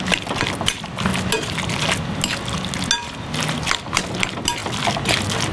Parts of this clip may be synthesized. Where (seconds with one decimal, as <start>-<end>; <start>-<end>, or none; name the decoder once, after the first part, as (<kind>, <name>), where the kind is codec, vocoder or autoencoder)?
none